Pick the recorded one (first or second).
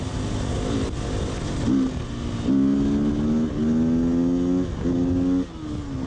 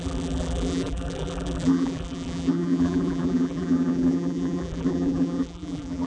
first